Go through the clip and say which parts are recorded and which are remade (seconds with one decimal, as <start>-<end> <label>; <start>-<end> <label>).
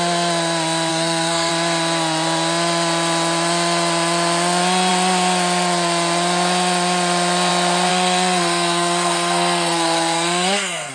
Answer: 0.0-0.9 recorded; 0.9-1.5 remade; 1.5-7.9 recorded; 7.9-10.9 remade